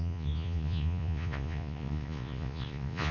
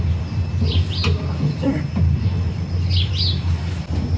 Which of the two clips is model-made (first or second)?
first